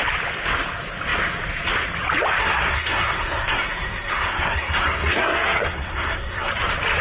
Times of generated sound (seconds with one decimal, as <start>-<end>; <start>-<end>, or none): 2.4-6.5